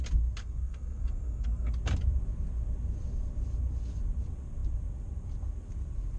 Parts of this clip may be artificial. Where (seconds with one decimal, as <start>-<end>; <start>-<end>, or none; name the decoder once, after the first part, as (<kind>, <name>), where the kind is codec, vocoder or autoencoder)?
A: 0.4-1.7 (codec, SNAC)